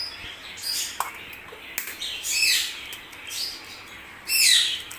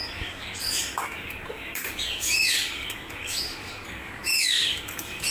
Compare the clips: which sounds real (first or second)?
first